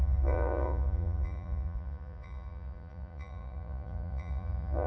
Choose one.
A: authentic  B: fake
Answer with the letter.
B